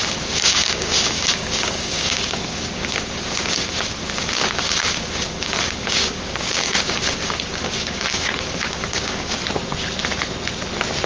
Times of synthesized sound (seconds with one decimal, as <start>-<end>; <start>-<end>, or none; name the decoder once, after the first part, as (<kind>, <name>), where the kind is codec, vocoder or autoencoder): 0.0-9.4 (codec, DAC)